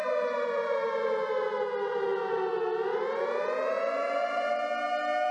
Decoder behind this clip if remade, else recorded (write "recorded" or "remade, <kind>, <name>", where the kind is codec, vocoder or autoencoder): recorded